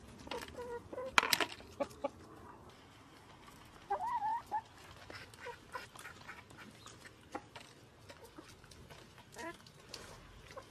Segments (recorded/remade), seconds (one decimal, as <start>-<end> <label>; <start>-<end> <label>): 0.0-10.7 recorded